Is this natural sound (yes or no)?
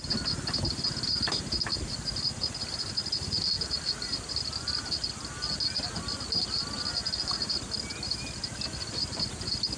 yes